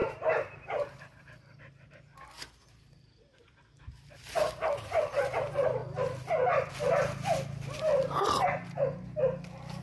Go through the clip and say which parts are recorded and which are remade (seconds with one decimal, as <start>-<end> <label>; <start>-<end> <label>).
0.0-9.8 recorded